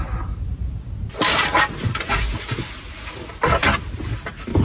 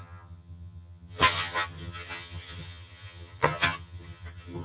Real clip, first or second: first